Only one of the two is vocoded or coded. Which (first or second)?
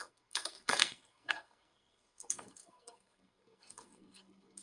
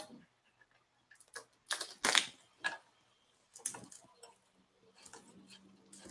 first